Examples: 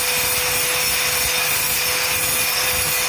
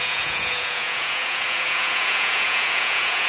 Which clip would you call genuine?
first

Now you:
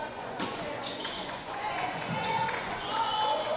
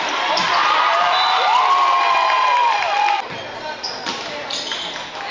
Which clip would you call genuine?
second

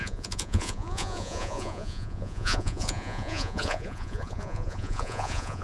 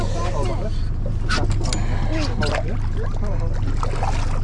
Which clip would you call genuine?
second